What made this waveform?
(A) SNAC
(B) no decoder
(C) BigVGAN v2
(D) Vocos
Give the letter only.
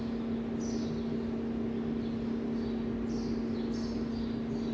B